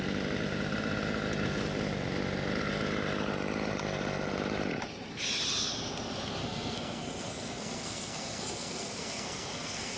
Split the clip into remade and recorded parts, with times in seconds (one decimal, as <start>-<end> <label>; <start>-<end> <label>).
0.0-6.4 recorded; 6.4-10.0 remade